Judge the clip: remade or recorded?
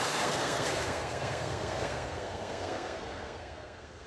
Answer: remade